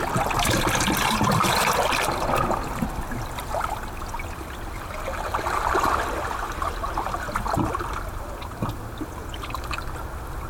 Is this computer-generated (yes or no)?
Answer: no